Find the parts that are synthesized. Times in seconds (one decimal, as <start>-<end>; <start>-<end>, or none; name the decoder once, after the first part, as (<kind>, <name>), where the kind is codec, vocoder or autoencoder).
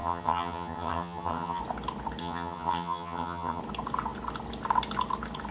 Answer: 0.0-1.6 (vocoder, HiFi-GAN); 2.2-3.6